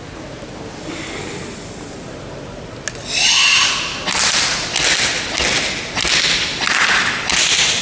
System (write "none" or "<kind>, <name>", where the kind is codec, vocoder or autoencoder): none